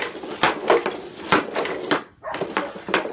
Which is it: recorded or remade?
recorded